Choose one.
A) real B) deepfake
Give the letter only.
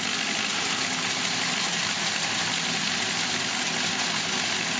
A